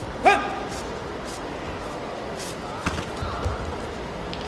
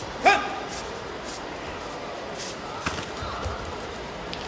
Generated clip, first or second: second